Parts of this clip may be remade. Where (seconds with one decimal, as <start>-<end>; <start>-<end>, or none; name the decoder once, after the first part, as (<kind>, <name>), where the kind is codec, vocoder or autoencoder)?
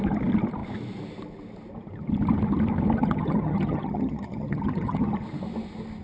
3.0-5.1 (vocoder, HiFi-GAN)